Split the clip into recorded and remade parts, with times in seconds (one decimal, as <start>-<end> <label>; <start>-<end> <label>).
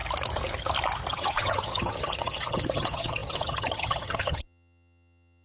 0.0-1.1 recorded; 1.1-5.4 remade